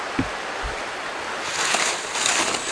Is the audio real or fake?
real